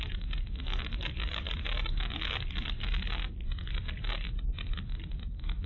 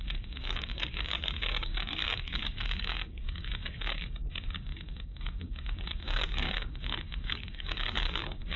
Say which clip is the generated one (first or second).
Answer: second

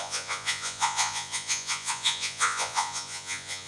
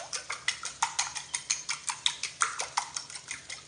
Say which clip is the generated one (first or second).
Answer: first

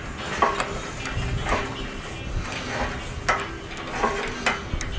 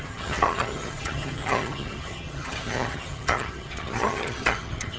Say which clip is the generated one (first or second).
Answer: second